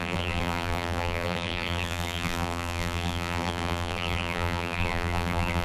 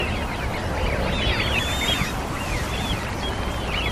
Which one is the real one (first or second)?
second